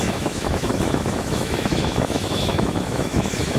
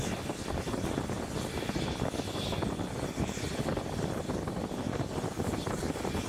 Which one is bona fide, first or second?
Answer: second